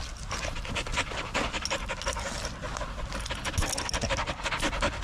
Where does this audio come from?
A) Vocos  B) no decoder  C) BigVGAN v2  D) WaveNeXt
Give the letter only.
B